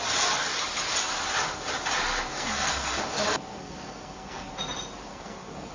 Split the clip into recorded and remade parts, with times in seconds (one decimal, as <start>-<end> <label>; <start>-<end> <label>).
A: 0.0-2.3 recorded; 2.3-3.0 remade; 3.0-3.5 recorded; 3.5-4.5 remade; 4.5-5.1 recorded; 5.1-5.7 remade